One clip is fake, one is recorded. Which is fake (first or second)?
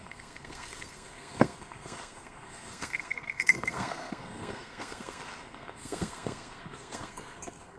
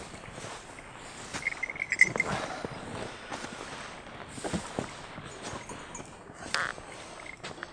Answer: first